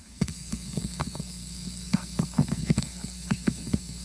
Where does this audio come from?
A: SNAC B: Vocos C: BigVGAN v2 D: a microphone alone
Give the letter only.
A